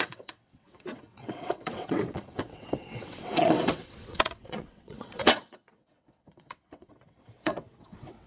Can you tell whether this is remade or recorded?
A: remade